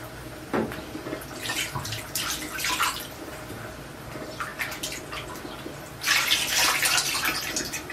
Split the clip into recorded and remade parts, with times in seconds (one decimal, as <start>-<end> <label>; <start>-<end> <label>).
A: 0.0-7.9 recorded

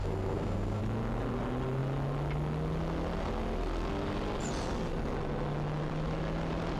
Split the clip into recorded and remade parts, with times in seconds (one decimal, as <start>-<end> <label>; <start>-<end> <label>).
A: 0.0-0.8 remade; 0.8-6.8 recorded

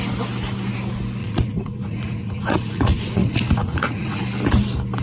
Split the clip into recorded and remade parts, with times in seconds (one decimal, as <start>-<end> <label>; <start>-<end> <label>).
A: 0.0-1.2 recorded; 1.2-4.2 remade; 4.2-5.0 recorded

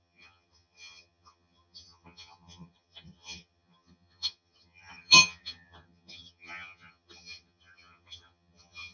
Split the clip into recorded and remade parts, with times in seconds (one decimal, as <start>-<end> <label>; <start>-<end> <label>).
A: 0.0-8.9 remade

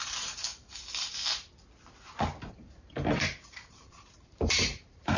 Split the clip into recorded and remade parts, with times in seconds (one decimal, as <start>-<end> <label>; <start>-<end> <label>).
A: 0.0-0.5 remade; 0.5-2.5 recorded; 2.5-5.2 remade

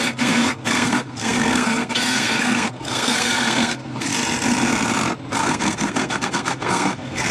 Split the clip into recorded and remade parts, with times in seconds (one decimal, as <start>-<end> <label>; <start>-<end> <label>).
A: 0.0-4.1 remade; 4.1-5.4 recorded; 5.4-7.3 remade